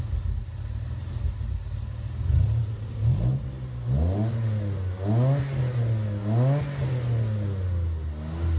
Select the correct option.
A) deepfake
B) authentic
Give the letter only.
B